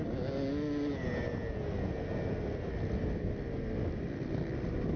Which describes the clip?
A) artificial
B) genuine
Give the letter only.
B